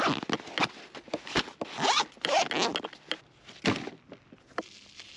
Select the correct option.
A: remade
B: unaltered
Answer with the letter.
B